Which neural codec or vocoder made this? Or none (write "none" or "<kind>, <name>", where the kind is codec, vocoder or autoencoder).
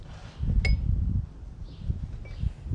none